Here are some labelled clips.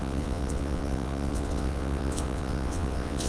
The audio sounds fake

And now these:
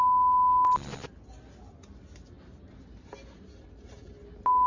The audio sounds real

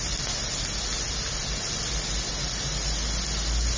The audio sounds real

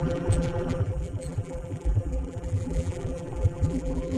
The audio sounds fake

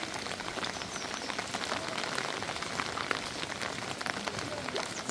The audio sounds real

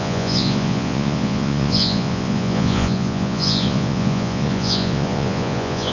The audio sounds fake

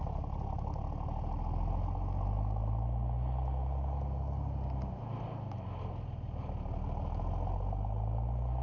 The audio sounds real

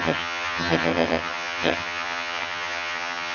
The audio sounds fake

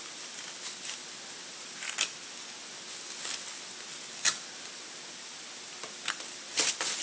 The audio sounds real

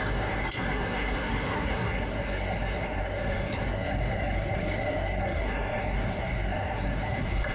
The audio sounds fake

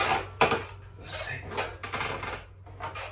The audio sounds real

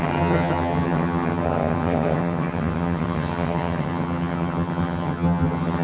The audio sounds fake